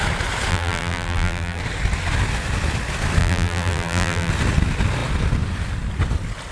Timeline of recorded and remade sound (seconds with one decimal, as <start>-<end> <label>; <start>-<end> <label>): 0.0-0.5 recorded; 0.5-1.6 remade; 1.6-3.2 recorded; 3.2-4.3 remade; 4.3-6.5 recorded